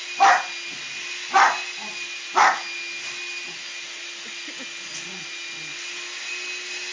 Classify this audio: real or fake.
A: real